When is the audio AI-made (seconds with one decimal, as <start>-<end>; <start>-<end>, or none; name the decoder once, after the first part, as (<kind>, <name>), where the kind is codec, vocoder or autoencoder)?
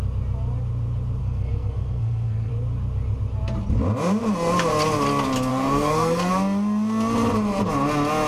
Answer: 1.2-2.5 (codec, SNAC); 5.5-6.3